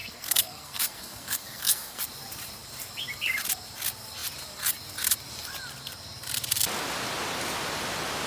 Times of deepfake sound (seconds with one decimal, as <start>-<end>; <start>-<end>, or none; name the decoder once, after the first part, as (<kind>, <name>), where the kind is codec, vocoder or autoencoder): 0.0-2.0 (codec, SNAC)